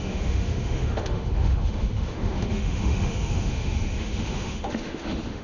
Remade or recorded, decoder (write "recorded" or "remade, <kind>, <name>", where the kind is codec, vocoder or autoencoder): remade, autoencoder, DAC-VAE